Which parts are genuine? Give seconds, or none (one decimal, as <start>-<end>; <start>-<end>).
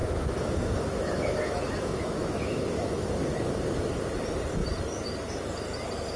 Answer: 3.1-6.2